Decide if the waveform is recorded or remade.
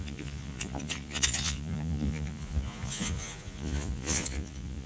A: remade